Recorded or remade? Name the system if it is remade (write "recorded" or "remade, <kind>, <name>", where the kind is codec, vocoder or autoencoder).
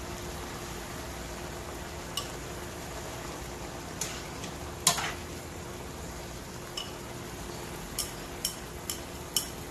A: recorded